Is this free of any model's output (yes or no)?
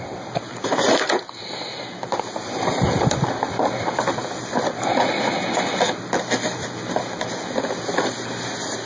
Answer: yes